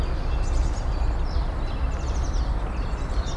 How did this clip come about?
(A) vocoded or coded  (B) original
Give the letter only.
B